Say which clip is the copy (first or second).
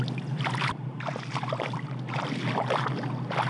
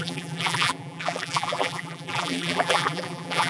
second